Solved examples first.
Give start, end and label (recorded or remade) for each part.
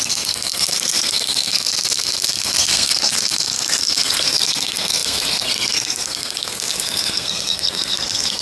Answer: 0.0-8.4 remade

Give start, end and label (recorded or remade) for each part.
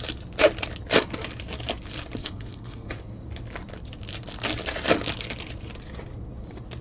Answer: 0.0-2.2 recorded; 2.2-2.9 remade; 2.9-6.8 recorded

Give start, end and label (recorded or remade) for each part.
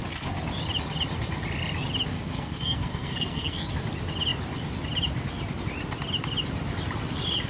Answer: 0.0-2.1 recorded; 2.1-3.7 remade; 3.7-7.5 recorded